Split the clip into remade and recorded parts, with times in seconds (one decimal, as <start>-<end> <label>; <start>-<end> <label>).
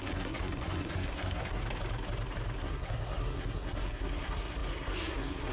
0.0-1.6 remade; 1.6-2.6 recorded; 2.6-5.5 remade